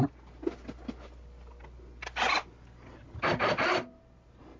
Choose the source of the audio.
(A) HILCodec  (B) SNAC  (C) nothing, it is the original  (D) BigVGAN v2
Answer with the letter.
C